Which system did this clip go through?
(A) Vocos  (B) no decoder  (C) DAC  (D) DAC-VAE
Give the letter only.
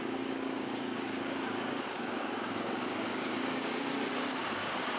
C